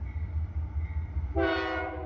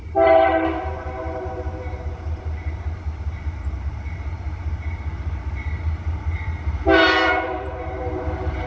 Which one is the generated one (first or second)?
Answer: second